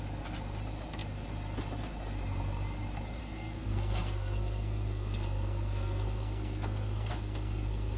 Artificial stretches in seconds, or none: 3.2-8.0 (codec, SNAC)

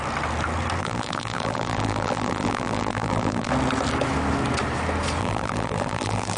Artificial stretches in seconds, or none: 0.8-3.5 (vocoder, BigVGAN v2); 5.2-6.4

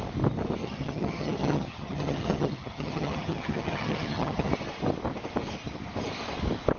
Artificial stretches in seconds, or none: 0.6-4.5 (vocoder, HiFi-GAN)

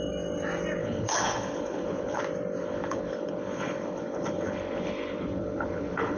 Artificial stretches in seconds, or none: 0.8-2.2 (codec, HILCodec); 2.6-6.2

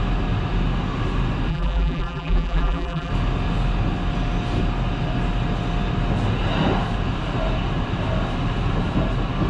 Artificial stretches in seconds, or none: 1.5-3.1 (vocoder, BigVGAN v2)

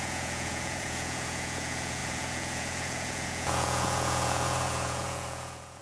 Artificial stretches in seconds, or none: 0.0-5.8 (vocoder, Vocos)

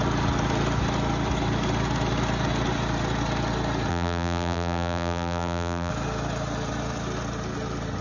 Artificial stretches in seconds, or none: 3.9-5.9 (vocoder, BigVGAN v2)

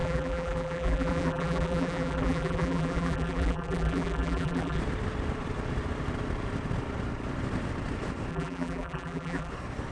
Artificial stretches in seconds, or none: 0.0-4.8 (vocoder, BigVGAN v2); 8.3-9.5